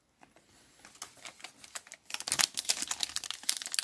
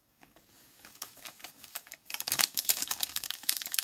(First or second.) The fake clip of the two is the second